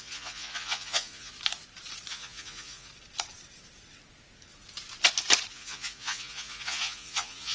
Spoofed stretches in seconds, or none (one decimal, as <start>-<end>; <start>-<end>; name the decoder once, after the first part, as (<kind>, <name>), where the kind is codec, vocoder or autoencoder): 0.0-1.3 (vocoder, Vocos); 2.1-2.9; 5.5-7.5

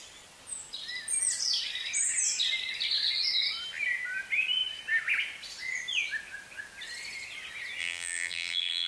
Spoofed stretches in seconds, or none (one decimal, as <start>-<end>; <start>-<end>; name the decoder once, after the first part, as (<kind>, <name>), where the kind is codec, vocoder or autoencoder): 7.8-8.9 (vocoder, BigVGAN v2)

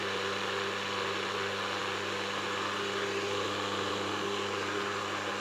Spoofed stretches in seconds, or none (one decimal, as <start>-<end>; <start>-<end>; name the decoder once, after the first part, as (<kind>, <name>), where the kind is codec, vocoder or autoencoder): none

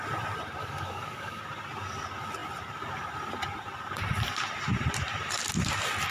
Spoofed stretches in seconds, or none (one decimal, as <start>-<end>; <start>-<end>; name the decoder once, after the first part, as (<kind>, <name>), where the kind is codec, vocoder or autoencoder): 0.6-1.4 (codec, DAC)

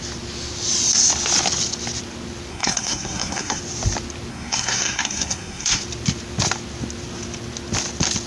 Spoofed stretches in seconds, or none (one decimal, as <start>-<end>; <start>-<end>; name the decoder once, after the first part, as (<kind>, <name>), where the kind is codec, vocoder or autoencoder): 2.5-3.6 (codec, SNAC); 4.3-5.8

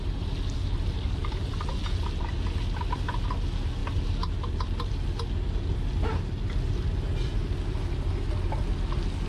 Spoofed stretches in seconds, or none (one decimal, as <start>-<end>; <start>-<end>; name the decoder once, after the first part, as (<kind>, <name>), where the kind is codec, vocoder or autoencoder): none